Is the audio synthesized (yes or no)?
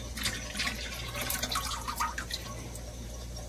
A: yes